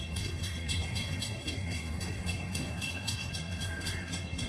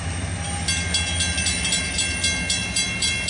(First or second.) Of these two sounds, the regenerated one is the first